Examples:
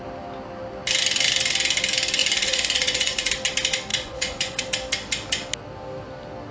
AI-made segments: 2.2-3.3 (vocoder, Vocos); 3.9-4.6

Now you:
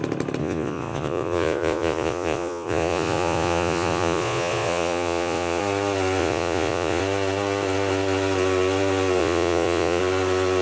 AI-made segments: 0.4-5.6 (vocoder, Vocos); 6.2-7.0; 9.2-10.0

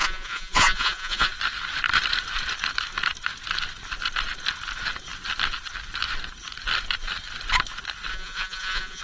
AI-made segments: 0.0-1.3 (vocoder, Vocos); 8.1-9.0

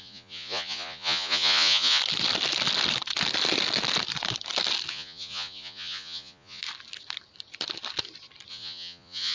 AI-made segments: 0.0-2.0 (vocoder, Vocos); 4.9-6.6; 8.5-9.3